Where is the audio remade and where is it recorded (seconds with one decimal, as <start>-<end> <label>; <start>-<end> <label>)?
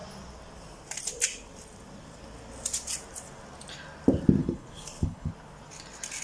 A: 0.0-4.4 recorded; 4.4-5.3 remade; 5.3-6.2 recorded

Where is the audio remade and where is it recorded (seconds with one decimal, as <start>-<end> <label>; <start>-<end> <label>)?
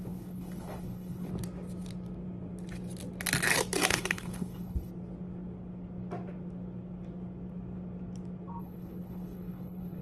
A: 0.0-1.3 remade; 1.3-3.9 recorded; 3.9-4.9 remade; 4.9-8.6 recorded; 8.6-10.0 remade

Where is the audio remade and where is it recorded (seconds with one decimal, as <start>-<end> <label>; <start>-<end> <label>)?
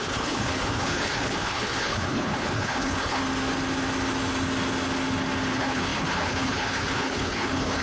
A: 0.0-3.2 remade; 3.2-5.5 recorded; 5.5-7.8 remade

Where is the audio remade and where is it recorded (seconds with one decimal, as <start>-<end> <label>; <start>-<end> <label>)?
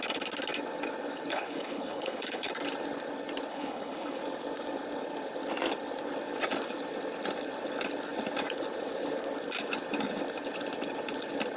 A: 0.0-1.3 recorded; 1.3-2.5 remade; 2.5-3.5 recorded; 3.5-4.2 remade; 4.2-11.6 recorded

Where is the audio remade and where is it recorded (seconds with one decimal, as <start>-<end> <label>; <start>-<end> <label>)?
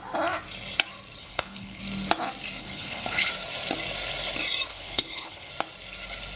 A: 0.0-1.2 recorded; 1.2-1.8 remade; 1.8-2.6 recorded; 2.6-3.3 remade; 3.3-4.7 recorded; 4.7-5.5 remade; 5.5-6.4 recorded